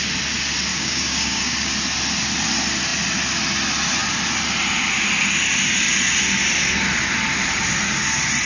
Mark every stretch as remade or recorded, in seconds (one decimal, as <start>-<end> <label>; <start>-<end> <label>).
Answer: 0.0-0.7 recorded; 0.7-1.7 remade; 1.7-8.4 recorded

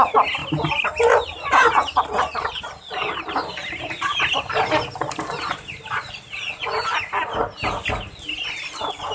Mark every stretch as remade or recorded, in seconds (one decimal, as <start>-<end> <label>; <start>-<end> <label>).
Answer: 0.0-9.1 recorded